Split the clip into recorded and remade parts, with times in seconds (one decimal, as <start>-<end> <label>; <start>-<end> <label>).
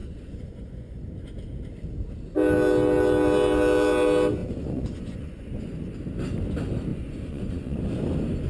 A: 0.0-1.1 remade; 1.1-4.4 recorded; 4.4-5.7 remade; 5.7-6.9 recorded; 6.9-7.8 remade; 7.8-8.5 recorded